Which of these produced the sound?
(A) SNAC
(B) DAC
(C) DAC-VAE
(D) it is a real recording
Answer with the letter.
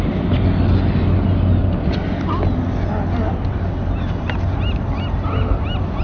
D